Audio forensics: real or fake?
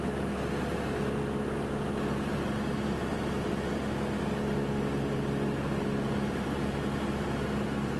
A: real